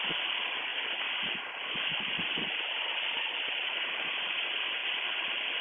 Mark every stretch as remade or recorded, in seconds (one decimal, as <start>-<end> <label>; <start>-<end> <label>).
0.0-0.7 remade; 0.7-2.5 recorded; 2.5-5.6 remade